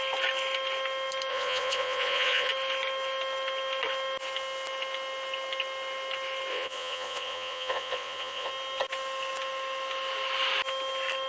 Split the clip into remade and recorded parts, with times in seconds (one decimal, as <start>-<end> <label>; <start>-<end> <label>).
0.0-1.3 recorded; 1.3-2.5 remade; 2.5-6.5 recorded; 6.5-8.5 remade; 8.5-11.3 recorded